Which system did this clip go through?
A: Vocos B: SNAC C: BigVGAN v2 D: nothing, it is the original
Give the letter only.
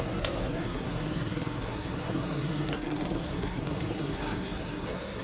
B